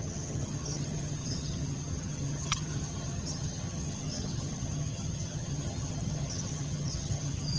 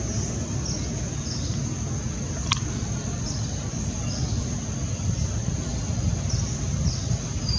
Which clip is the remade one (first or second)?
first